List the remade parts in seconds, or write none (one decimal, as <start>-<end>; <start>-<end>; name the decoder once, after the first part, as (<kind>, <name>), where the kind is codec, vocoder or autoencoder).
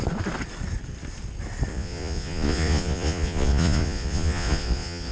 1.7-5.1 (vocoder, Vocos)